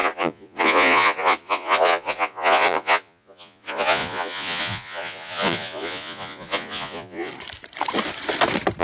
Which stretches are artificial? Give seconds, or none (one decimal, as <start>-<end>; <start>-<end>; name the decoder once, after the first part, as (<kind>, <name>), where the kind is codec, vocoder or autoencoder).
0.0-7.3 (vocoder, Vocos)